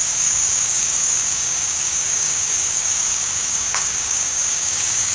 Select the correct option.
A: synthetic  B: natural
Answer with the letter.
A